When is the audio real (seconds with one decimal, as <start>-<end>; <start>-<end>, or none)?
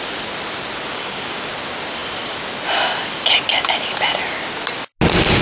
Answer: 0.0-0.9; 1.5-5.4